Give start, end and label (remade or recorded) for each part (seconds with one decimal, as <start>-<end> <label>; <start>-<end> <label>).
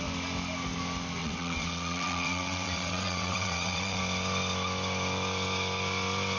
0.0-1.2 recorded; 1.2-4.0 remade; 4.0-6.4 recorded